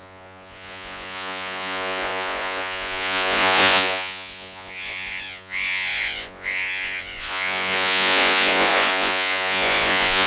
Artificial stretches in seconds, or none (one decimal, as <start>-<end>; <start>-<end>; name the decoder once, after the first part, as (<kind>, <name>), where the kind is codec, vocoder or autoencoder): 0.0-10.3 (vocoder, Vocos)